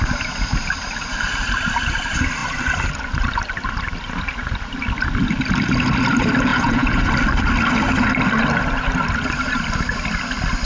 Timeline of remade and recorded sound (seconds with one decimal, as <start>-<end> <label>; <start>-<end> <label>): 0.0-6.5 recorded; 6.5-7.1 remade; 7.1-10.6 recorded